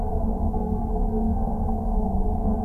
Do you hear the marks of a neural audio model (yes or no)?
yes